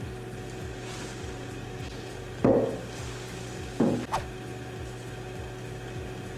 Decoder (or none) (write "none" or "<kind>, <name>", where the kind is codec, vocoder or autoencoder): none